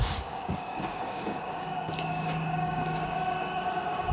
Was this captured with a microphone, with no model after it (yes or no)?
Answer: no